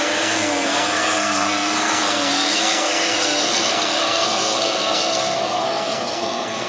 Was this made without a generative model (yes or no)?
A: no